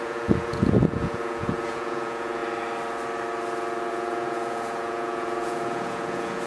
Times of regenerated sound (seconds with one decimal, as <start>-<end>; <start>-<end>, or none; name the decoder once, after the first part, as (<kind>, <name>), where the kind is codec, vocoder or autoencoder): 0.0-2.4 (vocoder, Vocos); 3.9-6.5